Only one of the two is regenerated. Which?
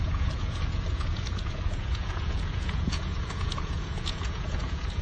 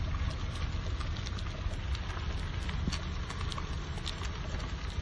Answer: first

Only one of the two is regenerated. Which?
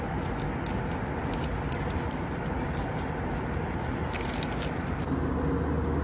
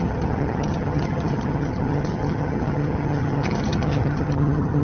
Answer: second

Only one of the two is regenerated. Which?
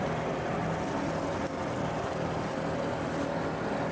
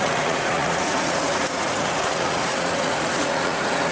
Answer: second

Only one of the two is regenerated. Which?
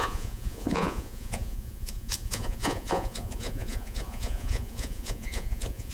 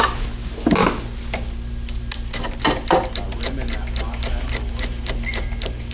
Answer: first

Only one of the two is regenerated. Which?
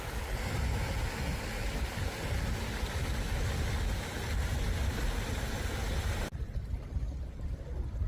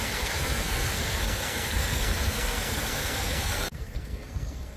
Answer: second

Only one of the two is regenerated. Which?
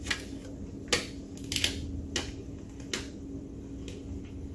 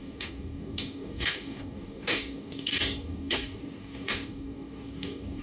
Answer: second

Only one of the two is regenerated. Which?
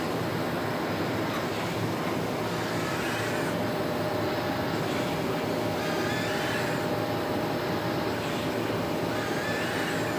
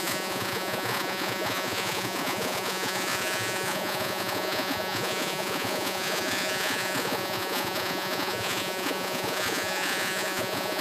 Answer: second